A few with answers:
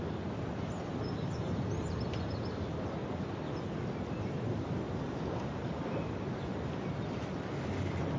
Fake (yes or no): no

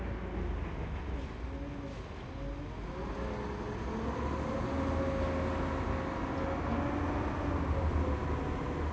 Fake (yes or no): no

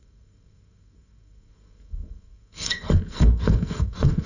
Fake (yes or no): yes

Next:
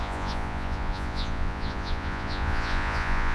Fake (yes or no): yes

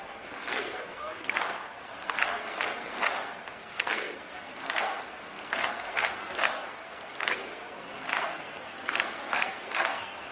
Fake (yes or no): yes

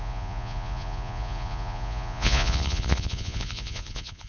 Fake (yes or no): yes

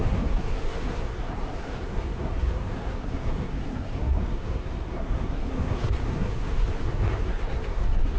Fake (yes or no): yes